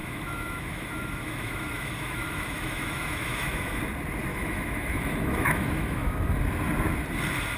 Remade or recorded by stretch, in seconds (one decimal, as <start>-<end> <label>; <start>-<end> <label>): 0.0-3.8 remade; 3.8-4.3 recorded; 4.3-6.4 remade; 6.4-7.6 recorded